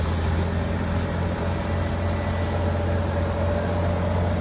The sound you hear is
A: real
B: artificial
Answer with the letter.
A